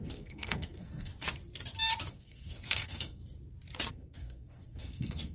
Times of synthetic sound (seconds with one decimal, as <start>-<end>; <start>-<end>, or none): 0.0-1.1; 2.1-3.2; 3.9-5.3